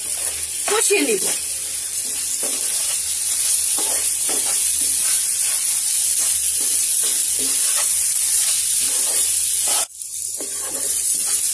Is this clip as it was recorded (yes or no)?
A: yes